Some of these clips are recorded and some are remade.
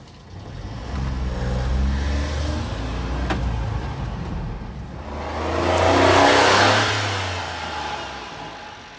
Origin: recorded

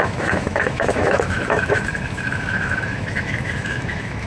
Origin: remade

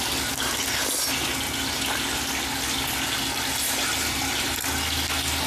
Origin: recorded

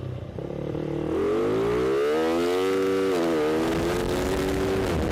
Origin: recorded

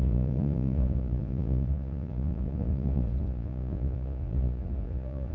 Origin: remade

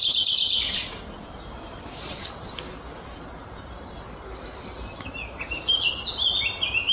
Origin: recorded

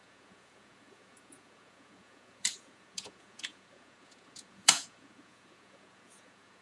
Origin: remade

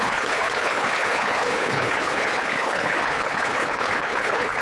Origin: remade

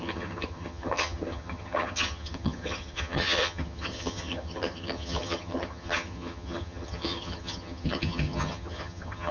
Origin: remade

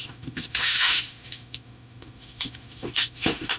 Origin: remade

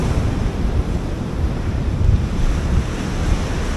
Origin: remade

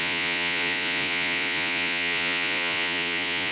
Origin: remade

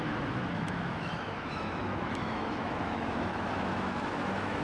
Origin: remade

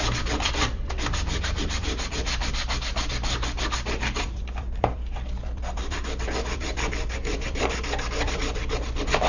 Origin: remade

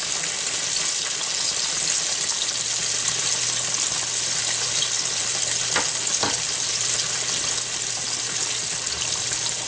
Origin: recorded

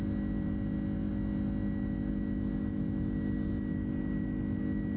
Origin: recorded